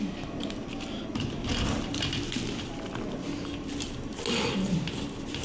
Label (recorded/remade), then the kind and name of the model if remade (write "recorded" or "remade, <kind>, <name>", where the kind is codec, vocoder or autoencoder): recorded